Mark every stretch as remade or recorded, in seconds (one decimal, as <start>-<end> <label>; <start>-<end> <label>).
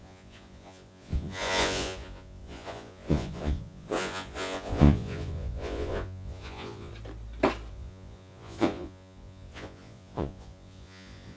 0.0-6.9 remade; 6.9-7.7 recorded; 7.7-11.4 remade